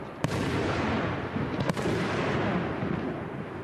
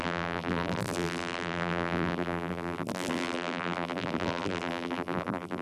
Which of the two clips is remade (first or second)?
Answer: second